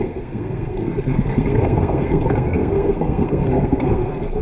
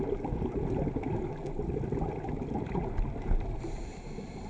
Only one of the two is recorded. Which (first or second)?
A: second